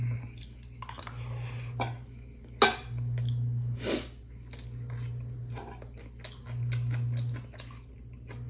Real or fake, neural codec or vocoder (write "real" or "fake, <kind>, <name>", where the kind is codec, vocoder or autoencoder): real